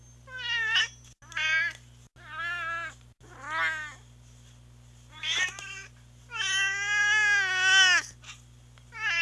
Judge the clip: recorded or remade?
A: recorded